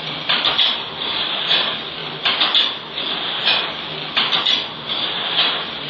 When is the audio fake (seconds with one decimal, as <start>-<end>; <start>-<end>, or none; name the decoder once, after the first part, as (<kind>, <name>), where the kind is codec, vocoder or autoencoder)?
0.0-2.0 (vocoder, BigVGAN v2); 3.7-5.9